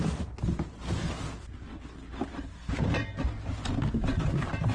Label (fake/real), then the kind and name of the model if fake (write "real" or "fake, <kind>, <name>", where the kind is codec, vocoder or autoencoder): real